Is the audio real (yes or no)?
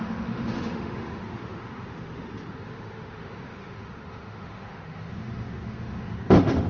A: no